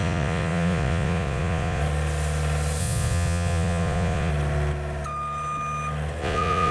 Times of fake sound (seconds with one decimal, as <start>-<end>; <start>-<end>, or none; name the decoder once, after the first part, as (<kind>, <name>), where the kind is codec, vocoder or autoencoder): 0.0-1.8 (vocoder, Vocos); 2.8-4.3; 6.2-6.7